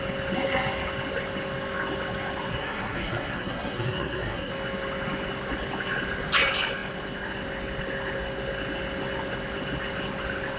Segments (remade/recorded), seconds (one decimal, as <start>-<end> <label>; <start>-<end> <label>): 0.0-2.5 recorded; 2.5-4.5 remade; 4.5-10.6 recorded

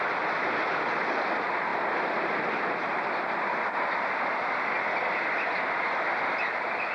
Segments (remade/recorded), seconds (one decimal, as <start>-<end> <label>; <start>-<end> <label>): 0.0-6.9 recorded

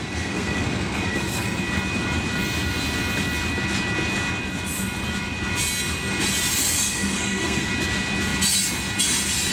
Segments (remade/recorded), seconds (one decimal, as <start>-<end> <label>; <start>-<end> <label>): 0.0-1.6 remade; 1.6-6.5 recorded; 6.5-7.7 remade; 7.7-9.5 recorded

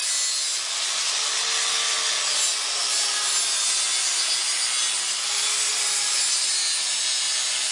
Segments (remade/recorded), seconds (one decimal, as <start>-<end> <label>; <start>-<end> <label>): 0.0-7.7 recorded